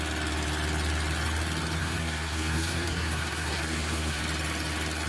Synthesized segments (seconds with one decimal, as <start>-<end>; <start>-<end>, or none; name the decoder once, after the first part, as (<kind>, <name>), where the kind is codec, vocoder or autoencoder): 1.8-4.2 (codec, SNAC)

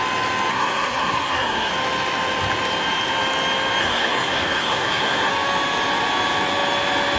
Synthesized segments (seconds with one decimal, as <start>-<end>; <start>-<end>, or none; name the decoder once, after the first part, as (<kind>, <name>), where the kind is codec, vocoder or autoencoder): 0.5-1.7 (codec, SNAC); 3.8-5.3